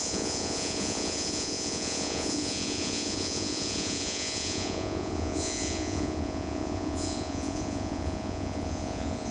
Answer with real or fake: fake